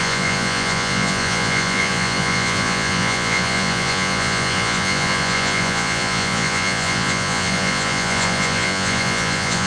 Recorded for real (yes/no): no